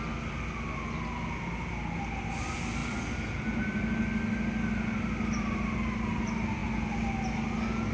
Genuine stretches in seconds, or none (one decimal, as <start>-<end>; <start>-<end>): 0.0-7.9